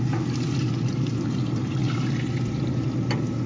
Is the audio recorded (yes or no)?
yes